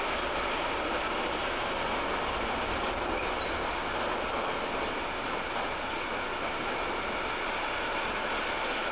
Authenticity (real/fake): real